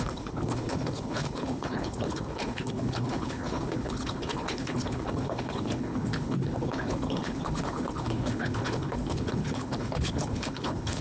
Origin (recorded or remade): remade